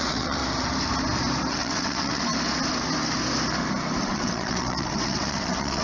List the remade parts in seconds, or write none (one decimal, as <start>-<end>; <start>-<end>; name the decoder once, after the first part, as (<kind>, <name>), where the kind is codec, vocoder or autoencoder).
0.0-0.4 (vocoder, WaveNeXt); 1.5-2.3; 4.0-5.8